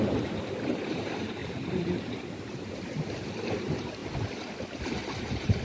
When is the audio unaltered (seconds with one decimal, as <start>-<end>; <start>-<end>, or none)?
4.0-4.6